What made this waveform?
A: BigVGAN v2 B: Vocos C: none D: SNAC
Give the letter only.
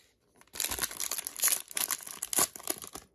C